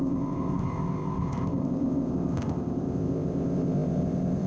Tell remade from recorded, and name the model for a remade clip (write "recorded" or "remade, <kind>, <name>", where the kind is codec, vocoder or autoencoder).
remade, codec, ZipCodec